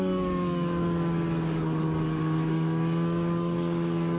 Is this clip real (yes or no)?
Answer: no